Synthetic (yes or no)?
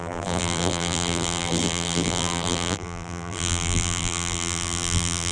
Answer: yes